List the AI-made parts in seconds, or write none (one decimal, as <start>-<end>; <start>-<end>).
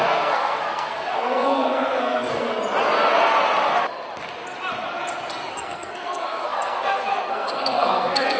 0.0-2.5; 5.5-8.4